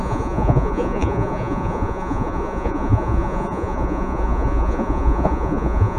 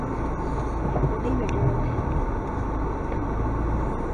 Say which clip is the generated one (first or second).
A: first